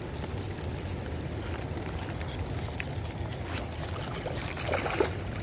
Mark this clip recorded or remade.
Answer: recorded